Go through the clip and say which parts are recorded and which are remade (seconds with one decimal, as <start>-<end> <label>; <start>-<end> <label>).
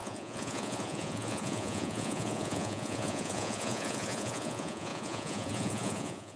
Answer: 0.0-6.4 remade